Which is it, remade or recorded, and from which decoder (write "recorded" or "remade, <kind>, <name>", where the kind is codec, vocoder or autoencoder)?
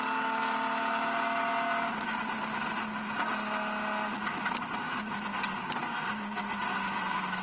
recorded